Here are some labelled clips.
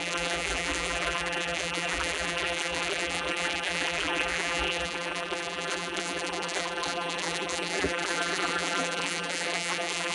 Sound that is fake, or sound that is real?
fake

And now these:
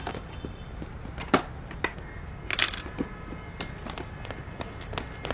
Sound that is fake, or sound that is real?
real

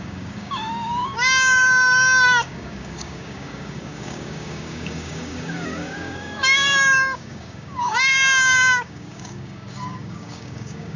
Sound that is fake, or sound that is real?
fake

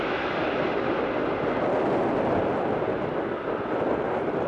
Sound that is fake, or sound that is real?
real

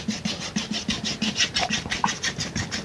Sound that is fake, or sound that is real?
real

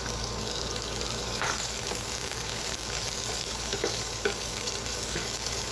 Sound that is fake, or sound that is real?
fake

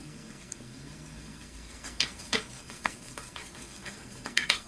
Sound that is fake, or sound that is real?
fake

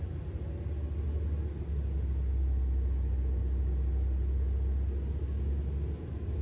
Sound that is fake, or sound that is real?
real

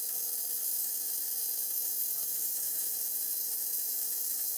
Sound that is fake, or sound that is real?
fake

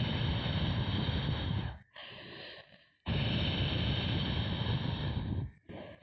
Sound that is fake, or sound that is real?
real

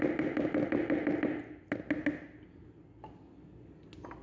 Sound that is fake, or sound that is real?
real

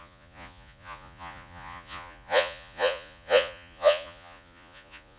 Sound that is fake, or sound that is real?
fake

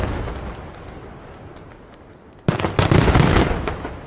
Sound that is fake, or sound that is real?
real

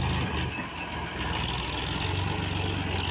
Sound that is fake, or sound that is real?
real